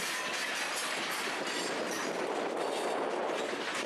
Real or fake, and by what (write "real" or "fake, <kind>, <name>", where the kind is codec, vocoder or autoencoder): real